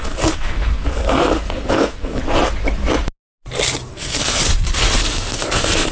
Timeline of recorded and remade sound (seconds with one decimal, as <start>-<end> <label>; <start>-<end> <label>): 0.0-2.2 remade; 2.2-3.9 recorded; 3.9-4.4 remade; 4.4-5.0 recorded; 5.0-5.9 remade